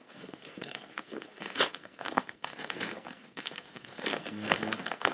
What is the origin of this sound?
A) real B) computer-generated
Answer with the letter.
B